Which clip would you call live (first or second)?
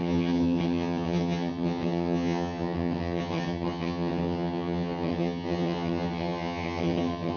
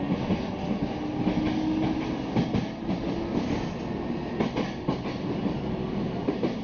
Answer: second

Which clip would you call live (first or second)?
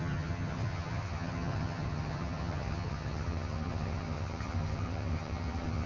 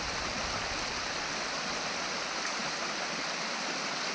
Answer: second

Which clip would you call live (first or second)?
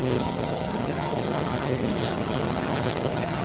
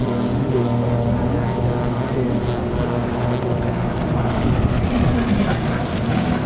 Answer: second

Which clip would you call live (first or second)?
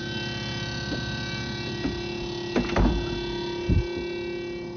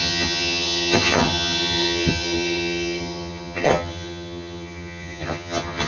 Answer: first